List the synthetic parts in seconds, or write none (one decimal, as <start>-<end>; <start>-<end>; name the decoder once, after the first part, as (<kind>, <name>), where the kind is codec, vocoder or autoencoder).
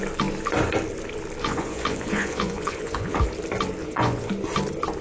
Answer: 1.4-3.2 (vocoder, Vocos); 3.8-4.3